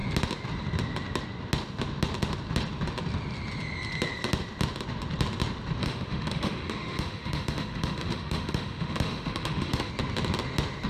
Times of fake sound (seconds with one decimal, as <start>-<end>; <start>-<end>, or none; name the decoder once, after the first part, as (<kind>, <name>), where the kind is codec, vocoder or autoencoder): 5.8-9.9 (autoencoder, DAC-VAE)

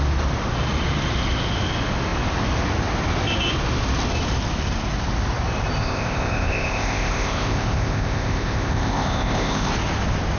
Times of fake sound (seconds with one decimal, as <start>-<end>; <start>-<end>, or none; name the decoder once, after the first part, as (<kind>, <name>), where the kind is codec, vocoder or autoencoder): 5.8-9.7 (codec, ZipCodec)

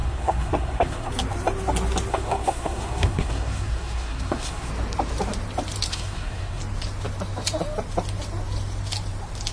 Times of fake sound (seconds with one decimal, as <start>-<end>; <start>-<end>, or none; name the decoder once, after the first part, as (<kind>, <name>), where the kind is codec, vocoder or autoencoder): 0.0-1.1 (codec, SNAC); 2.1-4.7; 5.9-6.6

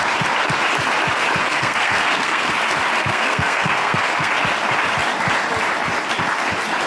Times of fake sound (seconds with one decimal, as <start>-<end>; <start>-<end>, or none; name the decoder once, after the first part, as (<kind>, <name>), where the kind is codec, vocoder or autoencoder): 1.4-2.5 (codec, SNAC); 3.1-4.3

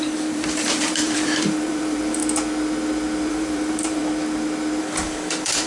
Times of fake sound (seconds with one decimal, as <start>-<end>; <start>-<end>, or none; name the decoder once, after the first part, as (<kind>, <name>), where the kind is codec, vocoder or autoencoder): 0.0-2.2 (vocoder, BigVGAN v2); 3.3-4.0; 4.8-5.7

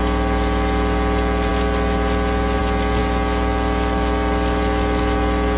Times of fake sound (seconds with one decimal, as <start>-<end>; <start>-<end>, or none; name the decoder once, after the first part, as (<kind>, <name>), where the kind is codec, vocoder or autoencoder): none

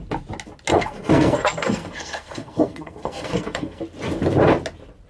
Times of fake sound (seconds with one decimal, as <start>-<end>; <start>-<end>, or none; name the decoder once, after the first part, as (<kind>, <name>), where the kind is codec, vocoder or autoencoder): 0.7-3.8 (codec, SNAC)